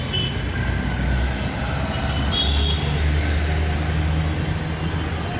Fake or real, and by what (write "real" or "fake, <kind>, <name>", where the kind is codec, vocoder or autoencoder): real